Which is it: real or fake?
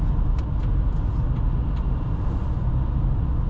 real